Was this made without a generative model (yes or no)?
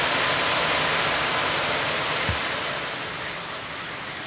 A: yes